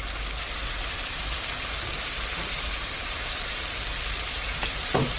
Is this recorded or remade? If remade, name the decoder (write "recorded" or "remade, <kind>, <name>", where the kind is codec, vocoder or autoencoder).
remade, vocoder, BigVGAN v2